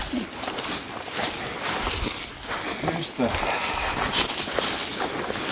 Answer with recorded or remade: recorded